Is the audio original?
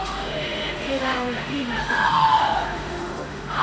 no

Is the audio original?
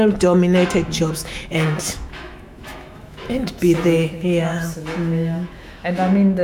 no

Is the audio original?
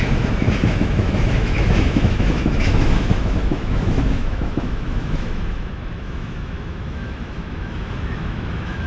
no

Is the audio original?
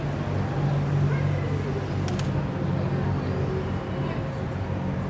yes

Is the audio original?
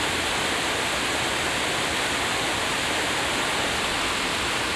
yes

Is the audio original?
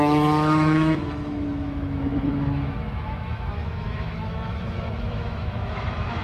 no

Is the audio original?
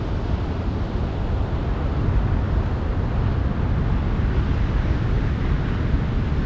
yes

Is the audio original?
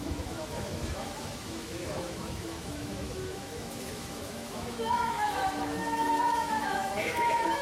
no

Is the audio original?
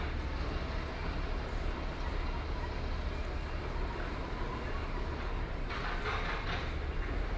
yes